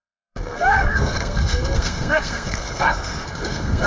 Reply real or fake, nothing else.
fake